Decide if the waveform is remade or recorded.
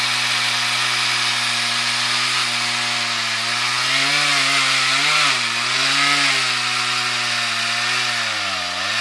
recorded